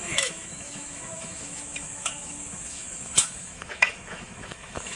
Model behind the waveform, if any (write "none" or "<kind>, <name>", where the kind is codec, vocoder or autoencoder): autoencoder, DAC-VAE